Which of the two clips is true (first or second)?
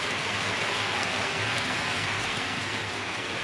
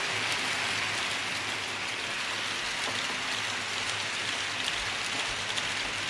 second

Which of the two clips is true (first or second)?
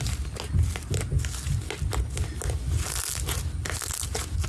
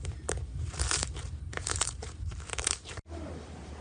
first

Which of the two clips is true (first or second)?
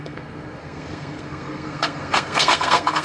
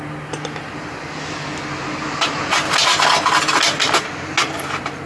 second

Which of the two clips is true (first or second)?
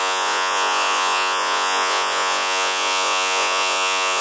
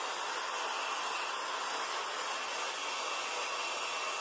second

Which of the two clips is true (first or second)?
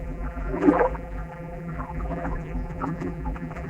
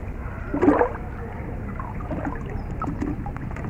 second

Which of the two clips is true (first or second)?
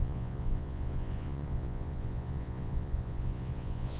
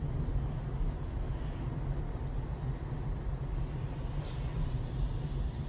second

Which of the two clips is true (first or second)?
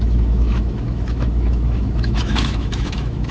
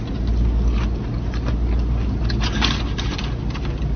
second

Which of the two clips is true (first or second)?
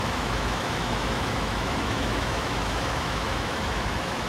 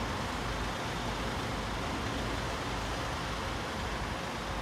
second